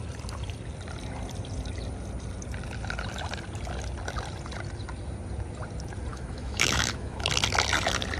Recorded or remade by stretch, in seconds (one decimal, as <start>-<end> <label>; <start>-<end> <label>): 0.0-6.1 recorded; 6.1-7.3 remade; 7.3-8.2 recorded